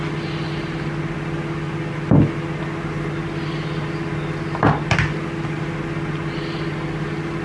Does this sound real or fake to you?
real